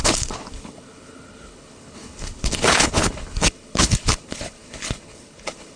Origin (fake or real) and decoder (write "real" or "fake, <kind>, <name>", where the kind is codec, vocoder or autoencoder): fake, codec, HILCodec